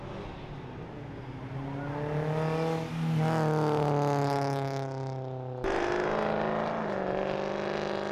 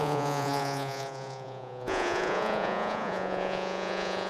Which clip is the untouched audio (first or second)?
first